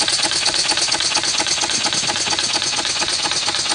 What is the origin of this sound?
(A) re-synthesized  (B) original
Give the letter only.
A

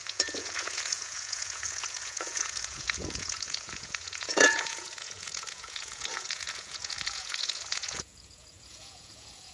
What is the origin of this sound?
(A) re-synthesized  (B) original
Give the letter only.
A